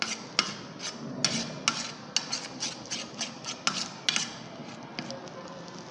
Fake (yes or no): no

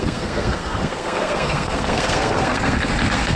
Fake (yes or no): yes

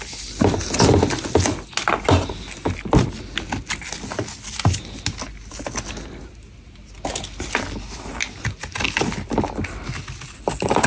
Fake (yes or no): no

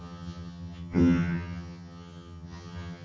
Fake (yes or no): yes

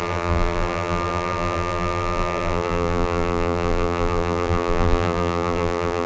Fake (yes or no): yes